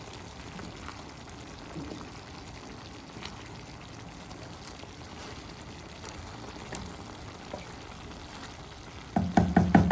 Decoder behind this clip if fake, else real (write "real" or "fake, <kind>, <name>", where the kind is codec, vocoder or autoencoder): real